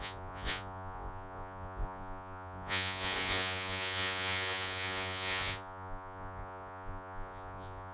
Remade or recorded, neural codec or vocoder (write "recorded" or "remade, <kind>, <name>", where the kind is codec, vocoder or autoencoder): remade, vocoder, Vocos